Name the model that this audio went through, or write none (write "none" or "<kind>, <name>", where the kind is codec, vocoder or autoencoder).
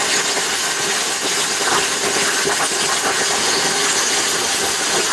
none